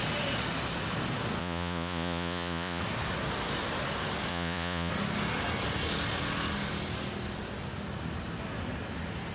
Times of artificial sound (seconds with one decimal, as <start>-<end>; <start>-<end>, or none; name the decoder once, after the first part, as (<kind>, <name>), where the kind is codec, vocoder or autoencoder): 1.4-2.8 (vocoder, Vocos); 4.3-4.9